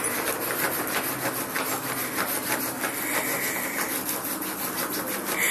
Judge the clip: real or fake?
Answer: real